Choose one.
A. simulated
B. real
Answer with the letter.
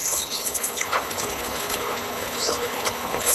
A